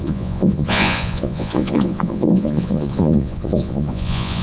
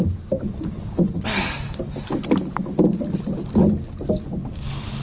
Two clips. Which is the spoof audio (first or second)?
first